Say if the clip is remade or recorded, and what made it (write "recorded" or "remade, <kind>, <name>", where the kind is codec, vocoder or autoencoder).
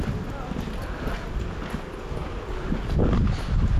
recorded